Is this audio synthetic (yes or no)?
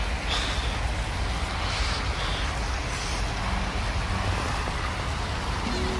no